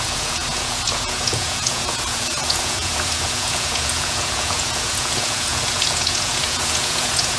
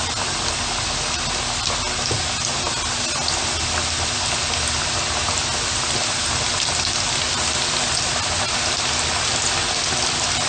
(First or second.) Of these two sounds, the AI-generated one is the first